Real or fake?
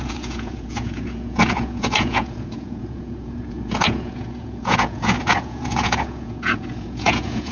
fake